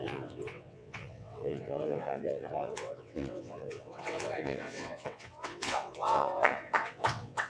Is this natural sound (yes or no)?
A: no